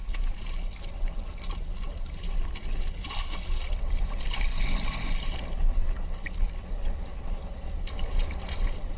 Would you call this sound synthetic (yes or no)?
no